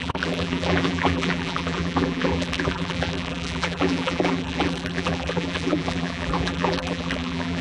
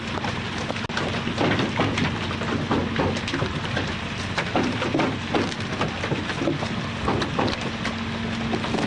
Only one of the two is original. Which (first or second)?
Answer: second